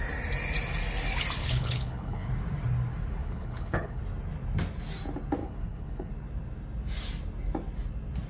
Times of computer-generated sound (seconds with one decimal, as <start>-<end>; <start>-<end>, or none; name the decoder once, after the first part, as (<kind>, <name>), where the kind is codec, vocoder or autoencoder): 1.4-2.3 (codec, HILCodec); 3.2-4.0; 5.4-6.1

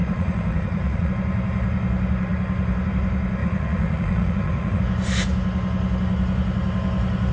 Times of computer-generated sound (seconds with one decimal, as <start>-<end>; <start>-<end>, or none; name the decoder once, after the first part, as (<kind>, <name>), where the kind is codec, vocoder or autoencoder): 0.0-1.1 (vocoder, Vocos); 3.4-4.8

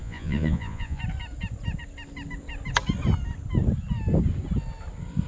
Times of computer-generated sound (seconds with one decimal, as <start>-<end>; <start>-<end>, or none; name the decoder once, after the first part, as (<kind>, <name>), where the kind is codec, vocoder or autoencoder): 0.0-1.0 (vocoder, Vocos)

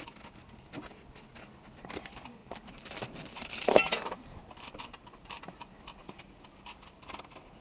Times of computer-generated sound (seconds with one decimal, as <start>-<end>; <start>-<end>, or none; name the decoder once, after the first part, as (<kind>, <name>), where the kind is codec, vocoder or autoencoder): 2.4-5.4 (vocoder, BigVGAN v2); 6.0-7.1

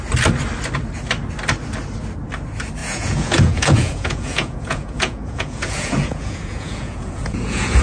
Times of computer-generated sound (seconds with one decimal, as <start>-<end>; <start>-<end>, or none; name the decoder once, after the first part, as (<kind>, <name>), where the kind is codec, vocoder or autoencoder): 2.8-7.8 (vocoder, Vocos)

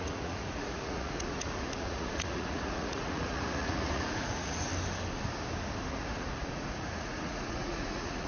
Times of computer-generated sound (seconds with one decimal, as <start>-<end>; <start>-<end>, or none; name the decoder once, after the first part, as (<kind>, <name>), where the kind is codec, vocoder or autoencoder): 0.0-4.7 (vocoder, Vocos); 5.9-8.3

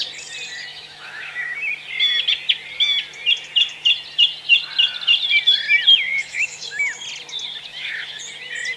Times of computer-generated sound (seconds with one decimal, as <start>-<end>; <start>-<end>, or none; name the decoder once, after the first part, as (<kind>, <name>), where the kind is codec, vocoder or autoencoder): 0.7-1.7 (autoencoder, DAC-VAE); 6.1-6.8; 7.7-8.2